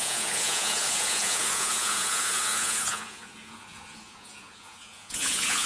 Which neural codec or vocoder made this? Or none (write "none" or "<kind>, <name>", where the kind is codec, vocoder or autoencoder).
vocoder, Vocos